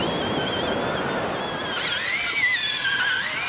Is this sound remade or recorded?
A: recorded